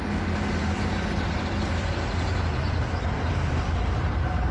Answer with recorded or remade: recorded